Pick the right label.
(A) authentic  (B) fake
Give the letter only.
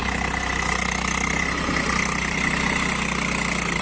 A